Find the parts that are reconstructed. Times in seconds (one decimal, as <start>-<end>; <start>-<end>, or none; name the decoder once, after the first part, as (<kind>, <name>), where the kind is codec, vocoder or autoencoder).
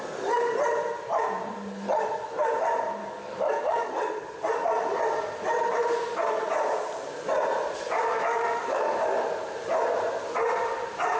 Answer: 3.0-3.9 (codec, DAC); 8.0-9.0